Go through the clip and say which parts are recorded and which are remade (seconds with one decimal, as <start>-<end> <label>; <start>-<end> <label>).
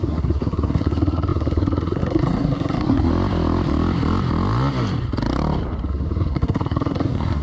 0.0-3.1 remade; 3.1-5.9 recorded; 5.9-7.4 remade